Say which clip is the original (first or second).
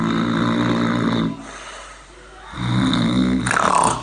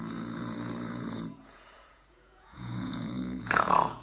first